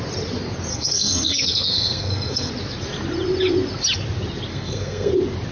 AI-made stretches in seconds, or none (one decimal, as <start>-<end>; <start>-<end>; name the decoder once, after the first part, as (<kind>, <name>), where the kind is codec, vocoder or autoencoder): 0.7-2.5 (codec, SNAC); 4.5-5.1